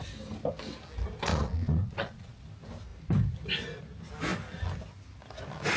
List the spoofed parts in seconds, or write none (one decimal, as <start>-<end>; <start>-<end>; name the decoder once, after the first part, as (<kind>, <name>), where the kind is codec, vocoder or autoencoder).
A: 1.3-2.4 (vocoder, Vocos)